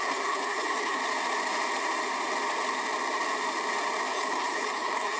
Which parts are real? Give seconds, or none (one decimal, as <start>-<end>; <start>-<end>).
1.0-4.1